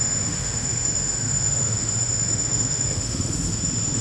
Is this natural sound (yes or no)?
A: no